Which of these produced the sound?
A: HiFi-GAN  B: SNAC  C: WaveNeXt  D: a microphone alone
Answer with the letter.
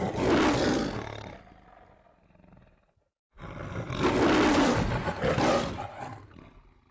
D